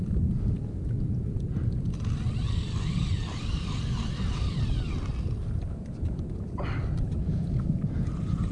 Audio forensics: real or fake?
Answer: real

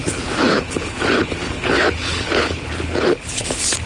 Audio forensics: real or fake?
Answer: fake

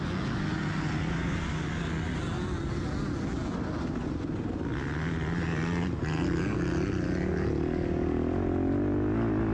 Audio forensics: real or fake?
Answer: real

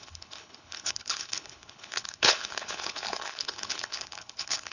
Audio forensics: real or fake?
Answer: fake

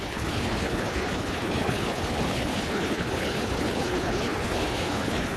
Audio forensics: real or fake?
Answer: fake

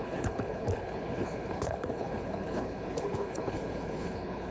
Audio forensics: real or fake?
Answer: fake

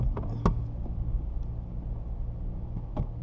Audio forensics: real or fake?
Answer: real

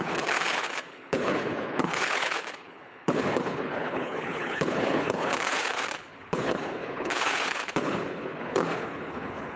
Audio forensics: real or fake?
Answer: fake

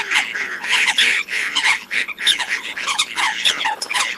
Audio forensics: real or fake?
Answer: fake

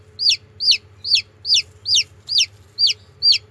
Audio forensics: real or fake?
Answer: real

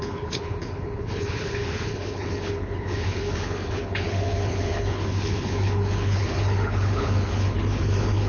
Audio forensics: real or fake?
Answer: fake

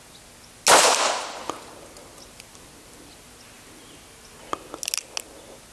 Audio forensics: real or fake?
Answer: real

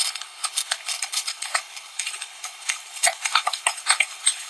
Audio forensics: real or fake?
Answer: fake